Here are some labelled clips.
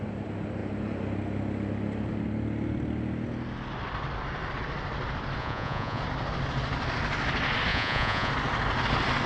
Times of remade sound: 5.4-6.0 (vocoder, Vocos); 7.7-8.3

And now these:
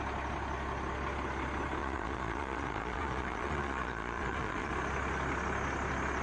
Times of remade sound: 1.8-4.7 (vocoder, Vocos)

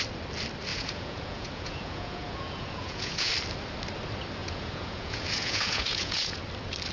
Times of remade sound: 0.7-3.3 (vocoder, Vocos); 4.4-6.4

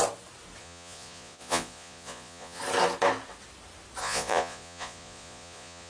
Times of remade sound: 0.6-2.6 (vocoder, Vocos); 4.0-5.9

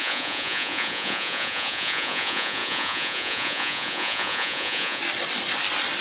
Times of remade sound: 0.0-5.0 (vocoder, Vocos)

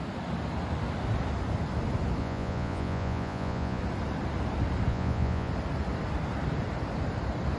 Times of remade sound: 2.2-3.8 (vocoder, Vocos); 4.9-5.5